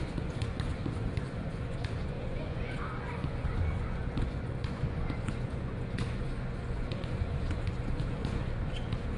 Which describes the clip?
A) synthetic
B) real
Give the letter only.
A